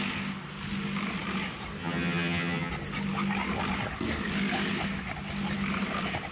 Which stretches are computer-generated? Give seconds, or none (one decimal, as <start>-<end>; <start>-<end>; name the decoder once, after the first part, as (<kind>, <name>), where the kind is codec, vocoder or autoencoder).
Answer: 1.8-2.7 (vocoder, HiFi-GAN)